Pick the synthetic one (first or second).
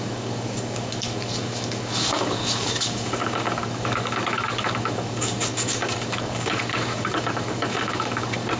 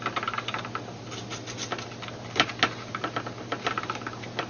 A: first